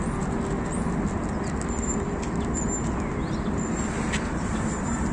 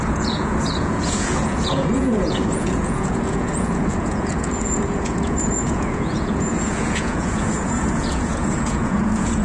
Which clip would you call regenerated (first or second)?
second